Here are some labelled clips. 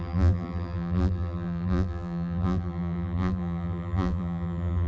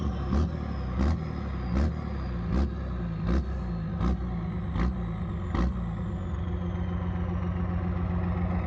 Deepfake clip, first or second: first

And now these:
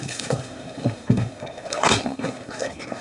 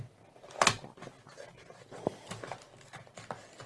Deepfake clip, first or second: first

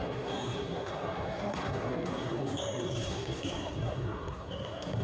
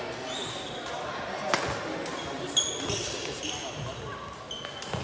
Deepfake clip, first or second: first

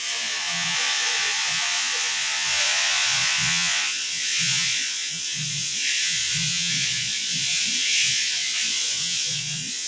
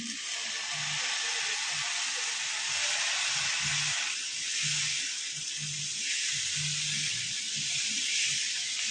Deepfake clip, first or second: first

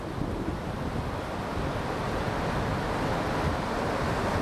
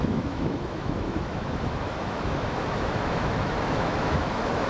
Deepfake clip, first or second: second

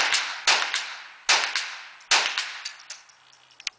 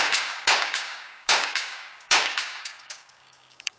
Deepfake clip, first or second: second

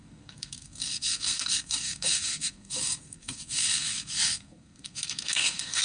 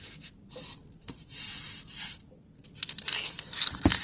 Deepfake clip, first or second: first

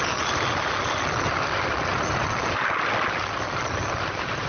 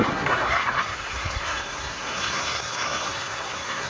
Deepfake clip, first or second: second